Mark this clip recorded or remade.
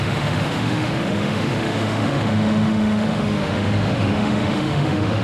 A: remade